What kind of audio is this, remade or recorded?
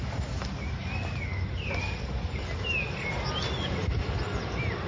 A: recorded